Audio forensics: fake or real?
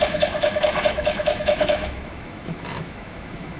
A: fake